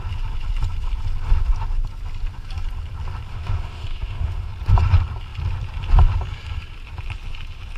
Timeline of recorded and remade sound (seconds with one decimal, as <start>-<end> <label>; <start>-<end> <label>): 0.0-3.3 recorded; 3.3-4.5 remade; 4.5-7.8 recorded